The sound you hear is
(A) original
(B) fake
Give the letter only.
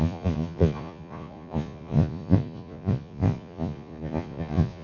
B